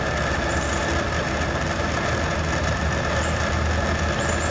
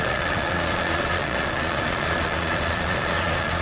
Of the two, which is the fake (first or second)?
second